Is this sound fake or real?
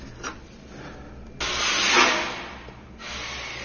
real